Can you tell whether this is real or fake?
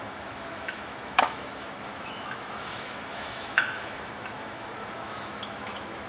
fake